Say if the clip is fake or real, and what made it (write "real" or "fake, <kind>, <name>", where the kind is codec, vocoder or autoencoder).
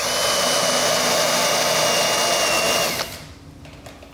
real